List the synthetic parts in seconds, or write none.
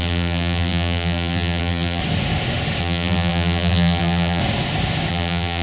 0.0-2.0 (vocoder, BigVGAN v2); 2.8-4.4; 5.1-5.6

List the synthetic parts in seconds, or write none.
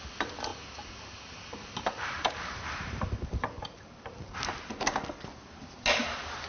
0.5-4.4 (vocoder, BigVGAN v2)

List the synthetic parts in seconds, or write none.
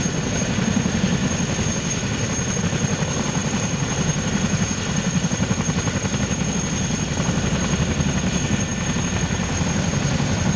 1.2-2.6 (vocoder, BigVGAN v2); 3.4-6.5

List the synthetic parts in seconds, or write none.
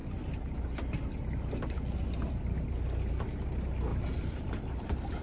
3.9-5.2 (vocoder, BigVGAN v2)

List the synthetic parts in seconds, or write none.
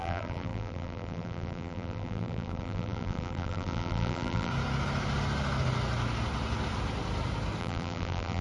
0.0-4.5 (vocoder, BigVGAN v2); 7.6-8.4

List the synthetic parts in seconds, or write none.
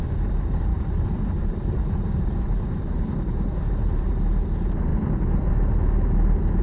0.7-4.1 (vocoder, BigVGAN v2)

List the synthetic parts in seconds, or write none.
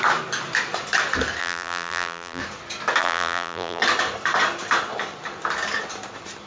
1.4-2.4 (vocoder, BigVGAN v2); 3.0-3.8